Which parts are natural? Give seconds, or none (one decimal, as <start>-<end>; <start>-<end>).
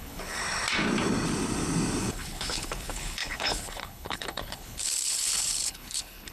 0.4-2.0